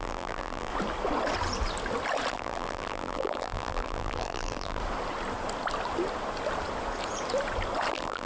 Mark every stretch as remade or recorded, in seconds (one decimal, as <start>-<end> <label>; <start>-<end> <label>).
0.0-0.7 remade; 0.7-2.3 recorded; 2.3-4.8 remade; 4.8-7.9 recorded; 7.9-8.3 remade